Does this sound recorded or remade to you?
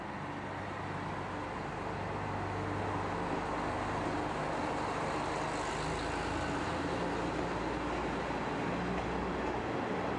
recorded